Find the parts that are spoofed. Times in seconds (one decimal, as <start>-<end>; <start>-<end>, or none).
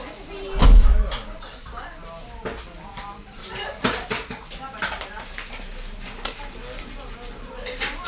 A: none